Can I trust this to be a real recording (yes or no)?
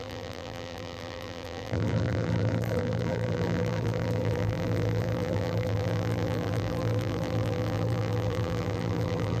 no